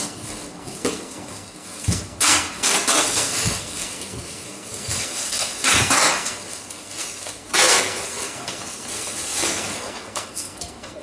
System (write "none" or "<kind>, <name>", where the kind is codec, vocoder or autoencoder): codec, SNAC